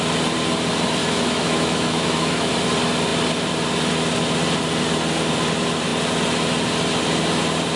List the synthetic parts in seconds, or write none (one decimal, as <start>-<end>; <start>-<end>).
1.0-2.5